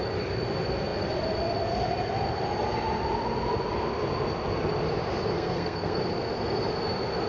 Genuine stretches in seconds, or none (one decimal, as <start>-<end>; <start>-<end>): 0.0-5.3; 6.0-7.3